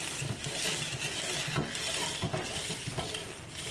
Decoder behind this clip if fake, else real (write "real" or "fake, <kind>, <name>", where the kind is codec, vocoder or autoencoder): real